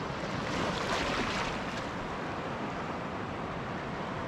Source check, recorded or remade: recorded